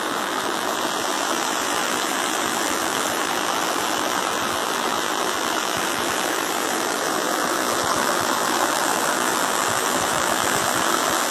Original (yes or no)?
no